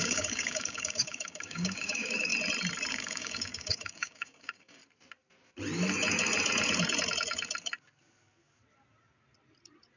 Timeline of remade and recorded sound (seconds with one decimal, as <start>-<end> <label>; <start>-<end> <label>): 0.0-2.3 remade; 2.3-2.9 recorded; 2.9-4.8 remade; 4.8-10.0 recorded